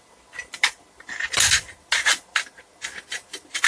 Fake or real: real